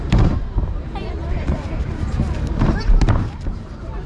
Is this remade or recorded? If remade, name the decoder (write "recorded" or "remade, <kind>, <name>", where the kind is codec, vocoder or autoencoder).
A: remade, vocoder, BigVGAN v2